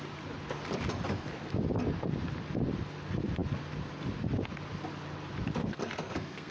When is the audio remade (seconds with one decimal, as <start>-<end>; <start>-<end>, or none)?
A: 5.6-6.5